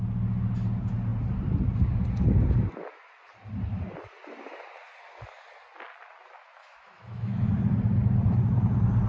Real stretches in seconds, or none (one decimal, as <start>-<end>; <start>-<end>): 0.0-6.6; 7.5-9.1